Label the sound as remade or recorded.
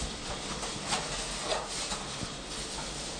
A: recorded